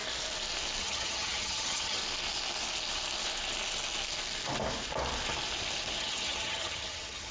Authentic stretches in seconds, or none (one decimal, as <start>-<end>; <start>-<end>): 0.0-0.8; 2.0-6.0

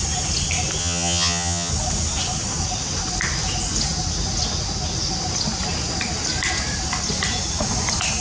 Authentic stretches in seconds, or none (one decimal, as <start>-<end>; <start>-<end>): 0.0-0.8; 1.7-8.2

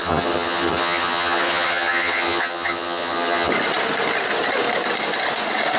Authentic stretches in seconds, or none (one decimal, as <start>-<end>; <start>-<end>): 3.5-5.8

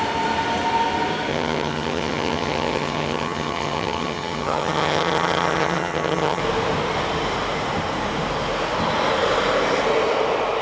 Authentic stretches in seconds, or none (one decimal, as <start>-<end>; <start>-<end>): 0.0-1.3; 6.4-10.6